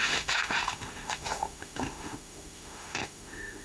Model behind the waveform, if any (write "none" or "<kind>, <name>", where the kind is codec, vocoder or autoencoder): autoencoder, DAC-VAE